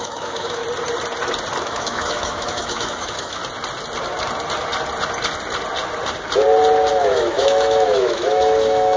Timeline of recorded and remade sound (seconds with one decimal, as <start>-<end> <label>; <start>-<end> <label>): 0.0-0.6 remade; 0.6-1.6 recorded; 1.6-3.4 remade; 3.4-6.9 recorded; 6.9-9.0 remade